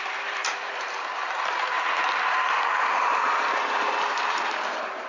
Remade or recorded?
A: remade